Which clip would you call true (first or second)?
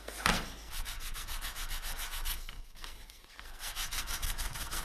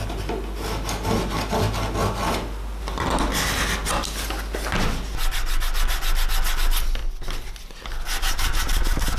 second